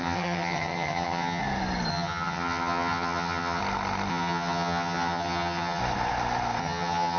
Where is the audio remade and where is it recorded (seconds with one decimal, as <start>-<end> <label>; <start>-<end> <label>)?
0.0-1.4 remade; 1.4-1.9 recorded; 1.9-3.6 remade; 3.6-4.1 recorded; 4.1-5.8 remade; 5.8-6.6 recorded; 6.6-7.2 remade